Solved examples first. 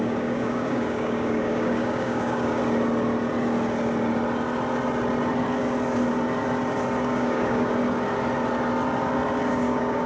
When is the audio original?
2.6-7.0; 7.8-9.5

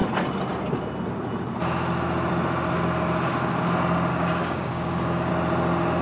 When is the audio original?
0.0-4.1; 5.3-6.0

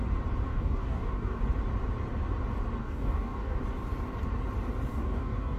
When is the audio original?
0.0-0.5; 1.4-2.8; 3.6-4.9

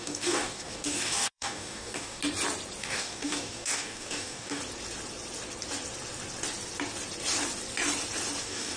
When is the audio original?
2.2-2.8; 4.6-8.4

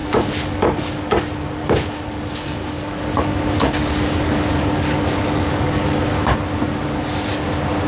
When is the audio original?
1.2-1.6; 6.0-7.9

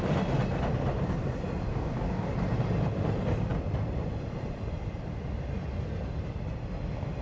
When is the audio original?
0.0-1.7; 2.3-7.2

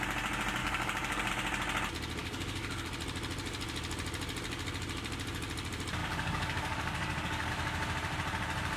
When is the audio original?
0.0-0.6; 1.3-2.2; 2.9-6.0; 7.5-8.8

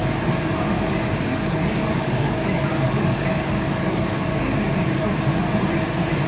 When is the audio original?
0.0-1.3; 5.1-6.3